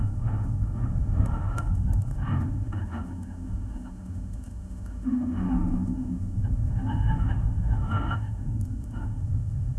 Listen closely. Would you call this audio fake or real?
fake